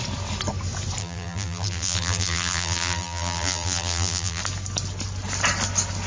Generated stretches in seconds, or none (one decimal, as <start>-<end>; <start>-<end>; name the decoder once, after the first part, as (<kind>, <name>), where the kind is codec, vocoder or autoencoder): 1.0-4.4 (vocoder, BigVGAN v2)